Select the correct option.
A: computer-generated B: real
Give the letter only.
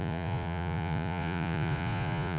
A